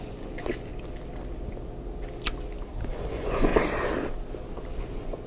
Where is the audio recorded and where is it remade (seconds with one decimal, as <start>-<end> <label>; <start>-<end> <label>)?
0.0-0.7 remade; 0.7-3.1 recorded; 3.1-3.5 remade; 3.5-4.8 recorded; 4.8-5.3 remade